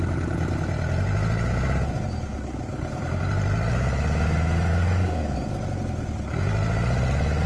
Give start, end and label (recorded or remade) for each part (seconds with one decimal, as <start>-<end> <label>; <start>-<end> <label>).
0.0-2.3 recorded; 2.3-3.0 remade; 3.0-4.7 recorded; 4.7-5.5 remade; 5.5-7.5 recorded